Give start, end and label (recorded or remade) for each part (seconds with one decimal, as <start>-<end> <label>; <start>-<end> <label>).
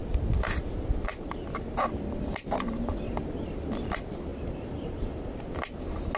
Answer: 0.0-4.3 recorded; 4.3-5.3 remade; 5.3-6.2 recorded